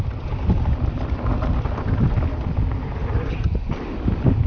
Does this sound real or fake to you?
real